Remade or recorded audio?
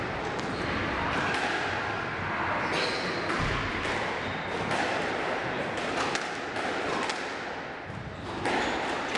recorded